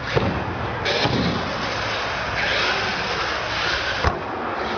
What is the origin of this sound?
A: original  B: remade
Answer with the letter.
A